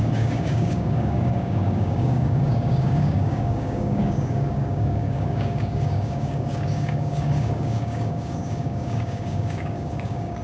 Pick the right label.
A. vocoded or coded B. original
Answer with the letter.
A